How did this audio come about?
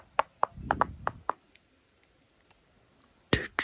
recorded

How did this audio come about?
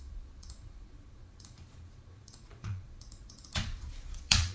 remade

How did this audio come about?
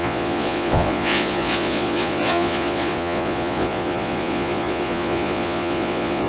remade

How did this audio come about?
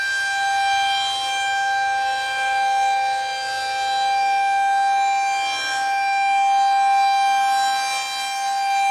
recorded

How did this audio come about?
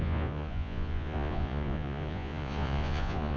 remade